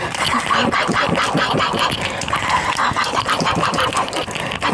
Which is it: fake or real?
real